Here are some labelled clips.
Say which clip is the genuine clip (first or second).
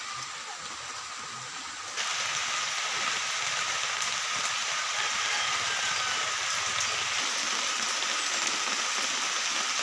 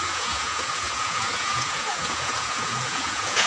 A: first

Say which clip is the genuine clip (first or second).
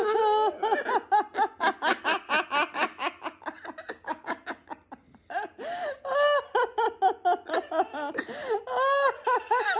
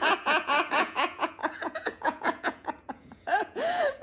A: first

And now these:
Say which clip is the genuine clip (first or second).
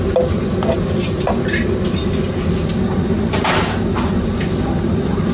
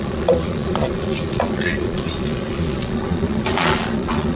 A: first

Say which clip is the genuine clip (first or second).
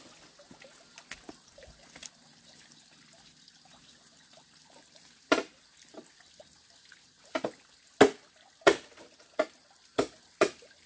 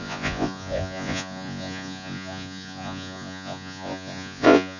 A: first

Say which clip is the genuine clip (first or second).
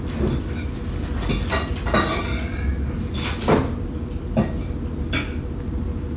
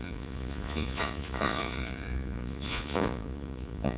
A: first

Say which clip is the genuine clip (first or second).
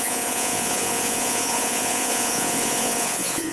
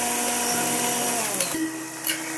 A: second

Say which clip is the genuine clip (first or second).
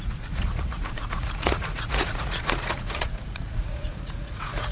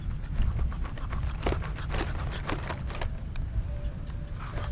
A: second